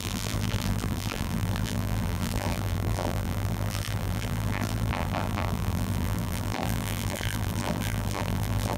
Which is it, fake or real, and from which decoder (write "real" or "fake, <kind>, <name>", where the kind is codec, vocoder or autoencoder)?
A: fake, vocoder, BigVGAN v2